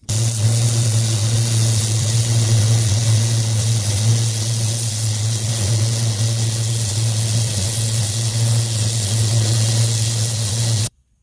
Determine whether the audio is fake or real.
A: fake